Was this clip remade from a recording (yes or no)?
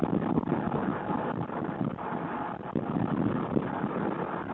no